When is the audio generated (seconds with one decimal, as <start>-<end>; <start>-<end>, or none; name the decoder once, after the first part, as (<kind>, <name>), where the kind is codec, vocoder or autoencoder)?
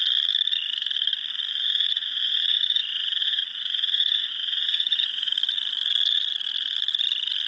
1.6-5.3 (vocoder, Vocos)